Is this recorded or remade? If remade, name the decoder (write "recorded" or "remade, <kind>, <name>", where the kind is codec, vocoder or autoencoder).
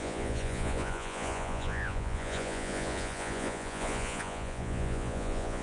remade, vocoder, Vocos